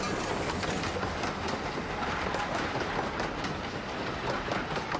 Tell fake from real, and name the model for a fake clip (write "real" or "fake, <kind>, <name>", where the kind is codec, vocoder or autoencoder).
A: real